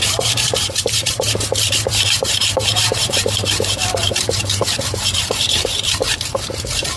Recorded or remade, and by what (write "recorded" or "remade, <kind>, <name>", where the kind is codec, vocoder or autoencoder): remade, vocoder, BigVGAN v2